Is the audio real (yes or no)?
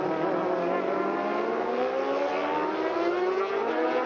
yes